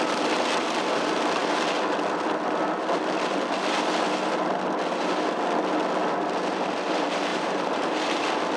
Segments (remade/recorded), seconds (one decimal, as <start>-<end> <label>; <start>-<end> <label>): 0.0-7.3 recorded; 7.3-8.2 remade; 8.2-8.6 recorded